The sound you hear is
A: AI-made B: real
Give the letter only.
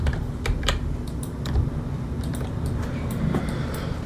A